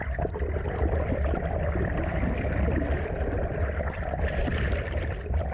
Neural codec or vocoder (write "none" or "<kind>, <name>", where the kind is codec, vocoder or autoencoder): vocoder, BigVGAN v2